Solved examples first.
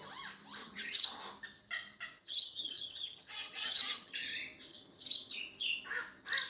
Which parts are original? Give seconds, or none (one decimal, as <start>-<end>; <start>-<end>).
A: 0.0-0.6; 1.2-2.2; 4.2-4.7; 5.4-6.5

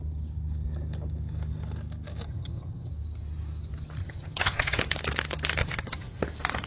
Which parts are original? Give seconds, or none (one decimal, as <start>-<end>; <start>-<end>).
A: 0.0-2.3; 2.9-4.0; 4.8-5.6; 6.2-6.7

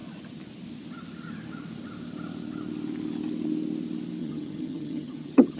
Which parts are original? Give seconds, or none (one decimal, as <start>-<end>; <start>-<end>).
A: 0.0-4.2